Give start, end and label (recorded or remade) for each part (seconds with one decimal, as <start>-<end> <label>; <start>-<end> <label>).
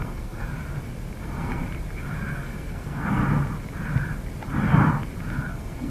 0.0-0.5 remade; 0.5-1.2 recorded; 1.2-1.6 remade; 1.6-2.1 recorded; 2.1-3.2 remade; 3.2-5.4 recorded; 5.4-5.9 remade